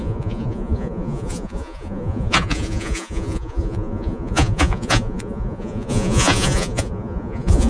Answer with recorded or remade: remade